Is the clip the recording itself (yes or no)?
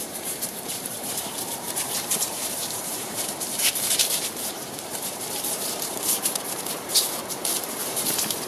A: no